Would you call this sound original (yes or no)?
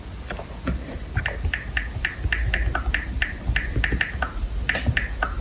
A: yes